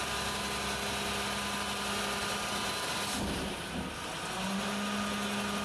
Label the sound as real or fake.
real